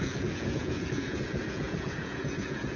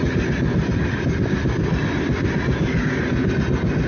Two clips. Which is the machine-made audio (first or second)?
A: first